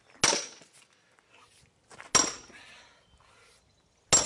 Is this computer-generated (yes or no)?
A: no